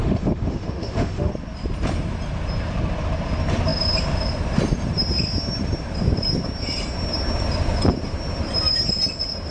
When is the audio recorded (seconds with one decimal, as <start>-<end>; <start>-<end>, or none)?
1.3-9.5